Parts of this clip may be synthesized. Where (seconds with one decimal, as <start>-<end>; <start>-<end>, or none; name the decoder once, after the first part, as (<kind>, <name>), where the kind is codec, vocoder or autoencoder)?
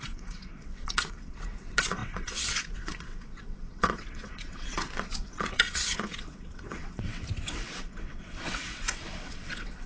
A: 0.0-9.9 (vocoder, WaveNeXt)